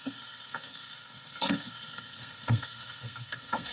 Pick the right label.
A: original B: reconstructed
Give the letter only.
B